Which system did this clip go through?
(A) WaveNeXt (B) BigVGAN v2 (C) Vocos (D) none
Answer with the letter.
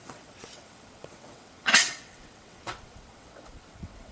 A